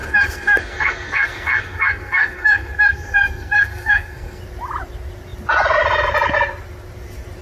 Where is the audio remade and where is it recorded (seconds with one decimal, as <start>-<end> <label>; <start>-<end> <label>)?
0.0-4.4 remade; 4.4-7.4 recorded